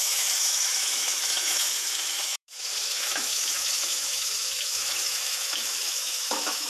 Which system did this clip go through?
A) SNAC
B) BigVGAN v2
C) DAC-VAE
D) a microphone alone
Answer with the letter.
C